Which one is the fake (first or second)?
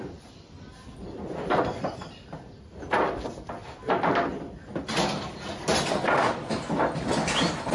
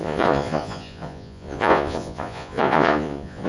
second